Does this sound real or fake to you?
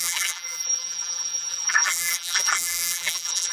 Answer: fake